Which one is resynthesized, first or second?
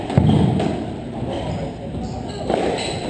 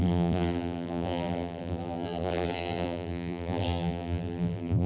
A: second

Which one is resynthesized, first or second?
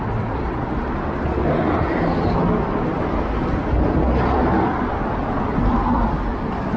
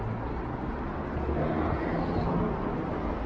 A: first